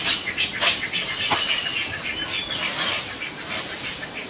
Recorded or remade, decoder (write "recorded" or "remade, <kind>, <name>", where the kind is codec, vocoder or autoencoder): recorded